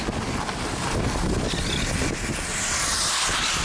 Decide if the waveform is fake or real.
real